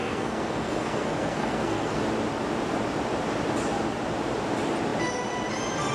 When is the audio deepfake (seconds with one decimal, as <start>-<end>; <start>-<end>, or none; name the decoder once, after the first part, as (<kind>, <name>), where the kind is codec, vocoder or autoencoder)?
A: 0.0-2.0 (codec, SNAC)